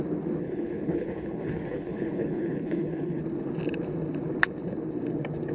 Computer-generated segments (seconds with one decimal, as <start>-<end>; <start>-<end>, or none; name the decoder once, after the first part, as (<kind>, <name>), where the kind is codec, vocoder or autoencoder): 0.4-3.2 (codec, HILCodec)